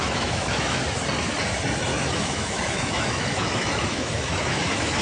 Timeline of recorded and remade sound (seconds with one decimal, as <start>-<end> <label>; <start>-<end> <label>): 0.0-0.8 remade; 0.8-1.9 recorded; 1.9-5.0 remade